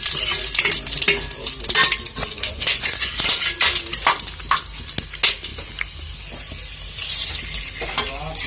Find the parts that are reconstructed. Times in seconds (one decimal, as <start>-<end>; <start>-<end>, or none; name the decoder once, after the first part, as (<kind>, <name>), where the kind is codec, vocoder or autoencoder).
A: 2.2-3.1 (vocoder, Vocos)